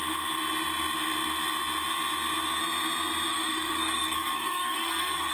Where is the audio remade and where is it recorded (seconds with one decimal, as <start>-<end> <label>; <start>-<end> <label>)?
0.0-3.3 recorded; 3.3-5.3 remade